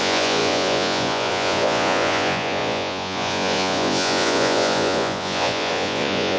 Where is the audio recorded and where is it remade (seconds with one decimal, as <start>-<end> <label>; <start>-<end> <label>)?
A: 0.0-6.4 remade